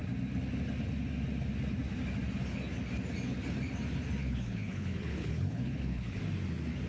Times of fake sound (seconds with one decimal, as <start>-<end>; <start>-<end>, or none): 4.2-6.2